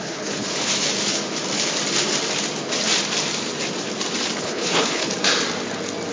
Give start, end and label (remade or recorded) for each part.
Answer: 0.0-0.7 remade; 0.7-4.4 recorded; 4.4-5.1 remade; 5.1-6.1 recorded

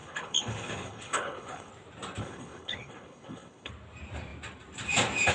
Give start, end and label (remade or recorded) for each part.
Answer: 0.0-1.7 remade; 1.7-2.2 recorded; 2.2-3.7 remade; 3.7-5.3 recorded

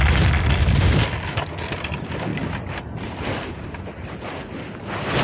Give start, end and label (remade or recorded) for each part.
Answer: 0.0-5.2 recorded

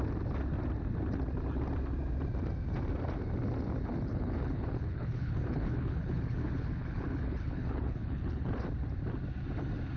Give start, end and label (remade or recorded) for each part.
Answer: 0.0-3.9 recorded; 3.9-8.5 remade; 8.5-10.0 recorded

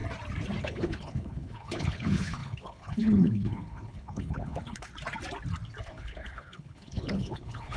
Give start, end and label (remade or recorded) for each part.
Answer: 0.0-0.6 recorded; 0.6-4.9 remade; 4.9-5.8 recorded; 5.8-7.8 remade